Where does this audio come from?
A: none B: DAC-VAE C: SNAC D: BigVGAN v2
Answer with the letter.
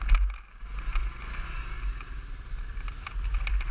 A